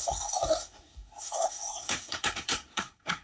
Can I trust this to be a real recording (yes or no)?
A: no